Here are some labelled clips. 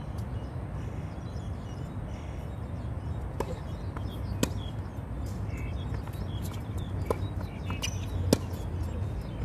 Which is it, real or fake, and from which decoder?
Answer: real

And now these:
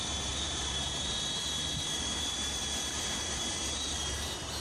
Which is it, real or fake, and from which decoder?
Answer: fake, vocoder, BigVGAN v2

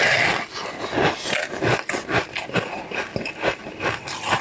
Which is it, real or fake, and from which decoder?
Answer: real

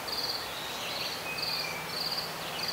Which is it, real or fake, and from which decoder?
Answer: real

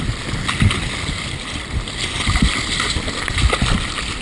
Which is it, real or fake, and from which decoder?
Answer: fake, vocoder, BigVGAN v2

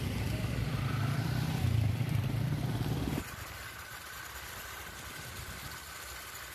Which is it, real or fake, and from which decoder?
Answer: fake, vocoder, BigVGAN v2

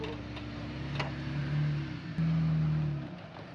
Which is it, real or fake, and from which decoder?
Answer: real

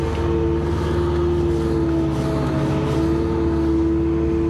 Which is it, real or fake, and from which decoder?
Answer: real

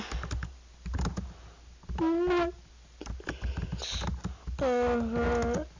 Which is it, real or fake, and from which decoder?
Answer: real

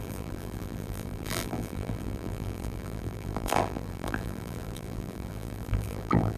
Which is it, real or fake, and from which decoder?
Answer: fake, vocoder, BigVGAN v2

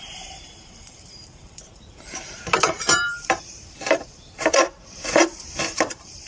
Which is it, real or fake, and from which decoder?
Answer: fake, vocoder, BigVGAN v2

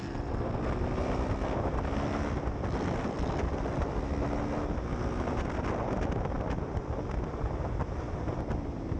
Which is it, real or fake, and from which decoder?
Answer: real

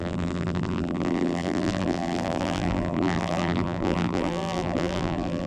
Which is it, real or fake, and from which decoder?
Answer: fake, vocoder, BigVGAN v2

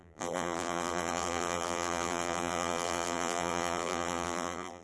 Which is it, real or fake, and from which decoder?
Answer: fake, vocoder, BigVGAN v2